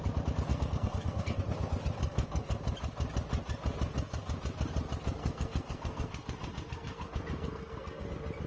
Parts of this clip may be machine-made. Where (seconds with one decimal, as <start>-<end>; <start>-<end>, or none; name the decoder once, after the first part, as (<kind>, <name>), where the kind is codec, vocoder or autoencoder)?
0.5-1.4 (codec, SNAC); 2.0-2.5; 5.2-8.1